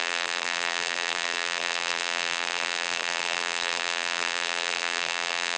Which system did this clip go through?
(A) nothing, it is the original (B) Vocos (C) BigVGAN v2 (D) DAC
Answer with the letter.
C